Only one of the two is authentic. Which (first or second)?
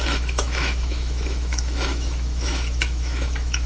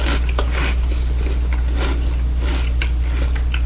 second